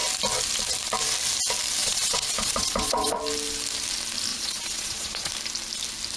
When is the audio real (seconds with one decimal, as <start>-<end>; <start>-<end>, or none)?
0.0-1.8; 3.2-4.3; 5.3-6.2